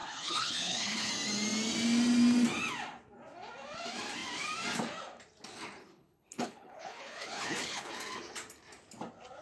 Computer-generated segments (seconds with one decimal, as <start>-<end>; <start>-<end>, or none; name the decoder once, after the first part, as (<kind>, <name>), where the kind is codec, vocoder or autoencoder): 0.0-1.1 (codec, HILCodec); 5.8-7.9